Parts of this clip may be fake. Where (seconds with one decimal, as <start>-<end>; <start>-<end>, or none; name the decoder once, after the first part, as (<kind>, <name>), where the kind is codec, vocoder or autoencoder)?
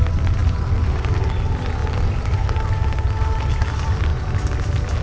none